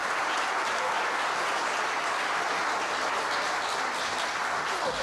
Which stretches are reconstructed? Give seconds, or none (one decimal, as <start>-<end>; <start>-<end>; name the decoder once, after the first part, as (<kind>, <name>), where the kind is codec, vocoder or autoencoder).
0.0-0.8 (vocoder, BigVGAN v2)